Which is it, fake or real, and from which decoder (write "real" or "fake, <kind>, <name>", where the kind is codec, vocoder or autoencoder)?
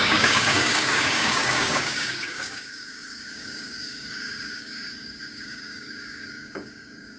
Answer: fake, codec, DAC